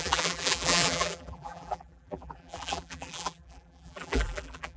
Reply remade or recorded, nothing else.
remade